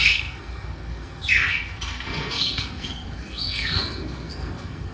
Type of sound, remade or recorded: remade